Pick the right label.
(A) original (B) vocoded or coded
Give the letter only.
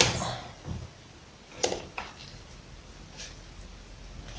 A